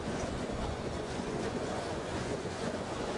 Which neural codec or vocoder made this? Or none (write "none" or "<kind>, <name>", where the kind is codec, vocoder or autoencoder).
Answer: vocoder, Vocos